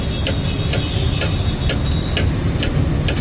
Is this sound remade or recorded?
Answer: recorded